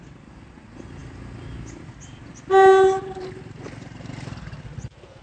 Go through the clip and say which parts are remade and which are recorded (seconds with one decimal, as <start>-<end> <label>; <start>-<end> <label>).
0.0-5.2 recorded